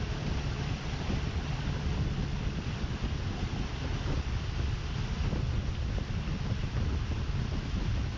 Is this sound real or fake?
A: real